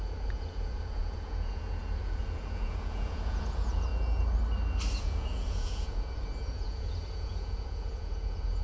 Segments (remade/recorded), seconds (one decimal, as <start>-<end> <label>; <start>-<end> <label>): 0.0-3.9 remade; 3.9-5.0 recorded; 5.0-8.6 remade